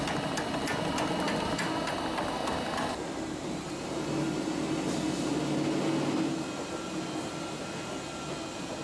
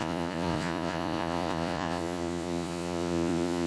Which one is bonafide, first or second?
first